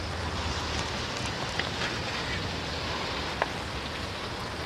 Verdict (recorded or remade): recorded